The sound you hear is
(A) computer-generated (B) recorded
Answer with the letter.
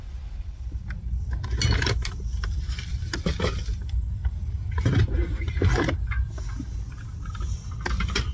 B